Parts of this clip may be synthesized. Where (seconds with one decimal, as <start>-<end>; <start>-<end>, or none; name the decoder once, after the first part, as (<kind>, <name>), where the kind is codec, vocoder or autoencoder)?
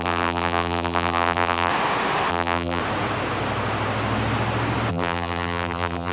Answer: 0.0-1.7 (vocoder, BigVGAN v2); 2.3-2.8; 4.9-6.1